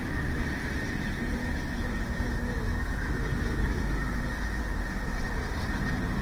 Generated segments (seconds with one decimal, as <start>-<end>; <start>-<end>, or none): 1.4-4.6